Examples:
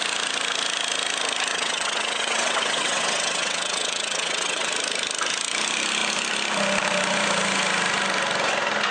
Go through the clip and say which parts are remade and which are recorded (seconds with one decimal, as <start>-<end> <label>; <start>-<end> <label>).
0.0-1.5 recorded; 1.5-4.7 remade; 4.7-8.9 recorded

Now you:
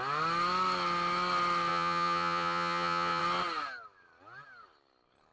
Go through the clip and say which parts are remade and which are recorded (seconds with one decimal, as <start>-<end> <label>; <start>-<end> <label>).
0.0-1.7 recorded; 1.7-3.2 remade; 3.2-5.3 recorded

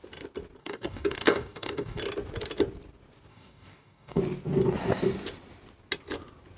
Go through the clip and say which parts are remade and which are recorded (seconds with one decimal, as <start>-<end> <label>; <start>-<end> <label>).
0.0-0.6 recorded; 0.6-2.0 remade; 2.0-3.3 recorded; 3.3-4.2 remade; 4.2-6.6 recorded

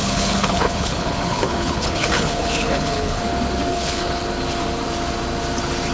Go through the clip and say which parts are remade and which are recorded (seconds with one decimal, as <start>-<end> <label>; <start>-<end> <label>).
0.0-3.2 remade; 3.2-3.7 recorded; 3.7-4.3 remade; 4.3-5.9 recorded

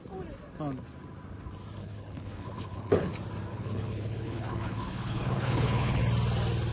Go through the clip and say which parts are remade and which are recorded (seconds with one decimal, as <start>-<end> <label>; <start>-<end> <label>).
0.0-1.8 recorded; 1.8-3.1 remade; 3.1-3.5 recorded; 3.5-6.0 remade; 6.0-6.7 recorded